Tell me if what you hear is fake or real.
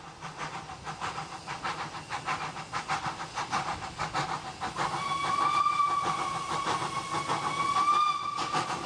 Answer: real